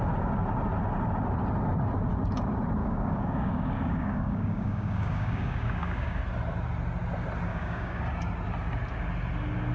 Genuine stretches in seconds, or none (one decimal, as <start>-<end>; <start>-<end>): 0.0-2.8; 6.2-7.5; 8.0-9.7